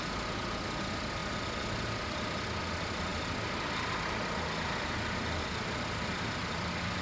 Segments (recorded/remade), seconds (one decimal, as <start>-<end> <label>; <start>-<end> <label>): 0.0-7.0 recorded